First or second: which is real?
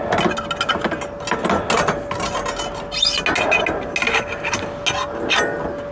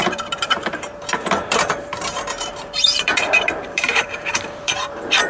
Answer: first